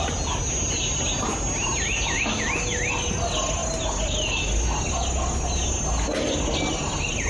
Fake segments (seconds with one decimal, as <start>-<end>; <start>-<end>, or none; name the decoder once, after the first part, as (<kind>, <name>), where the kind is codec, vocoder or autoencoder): none